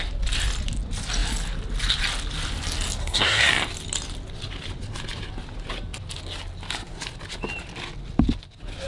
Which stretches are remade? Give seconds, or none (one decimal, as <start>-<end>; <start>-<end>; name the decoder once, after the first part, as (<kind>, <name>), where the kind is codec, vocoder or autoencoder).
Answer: 3.0-3.5 (codec, SNAC)